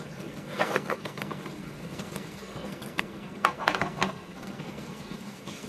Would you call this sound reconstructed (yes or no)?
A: yes